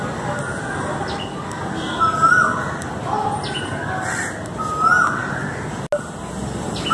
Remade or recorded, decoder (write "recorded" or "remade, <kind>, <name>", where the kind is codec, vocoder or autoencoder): recorded